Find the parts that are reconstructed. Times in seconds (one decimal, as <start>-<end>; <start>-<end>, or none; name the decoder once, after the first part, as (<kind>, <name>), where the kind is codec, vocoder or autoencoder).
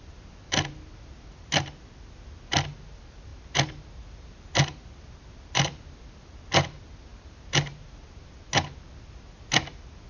none